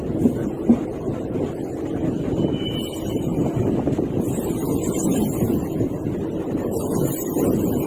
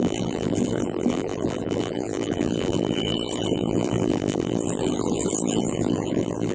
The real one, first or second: first